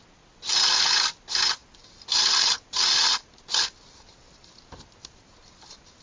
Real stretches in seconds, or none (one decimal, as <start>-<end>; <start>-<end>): 0.0-6.0